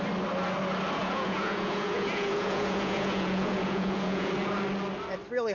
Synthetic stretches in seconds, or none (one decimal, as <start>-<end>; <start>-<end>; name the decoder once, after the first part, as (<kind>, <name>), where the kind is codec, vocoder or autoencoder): 1.0-4.3 (vocoder, Vocos)